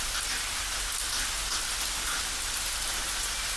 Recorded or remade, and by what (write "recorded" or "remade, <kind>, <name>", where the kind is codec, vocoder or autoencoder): recorded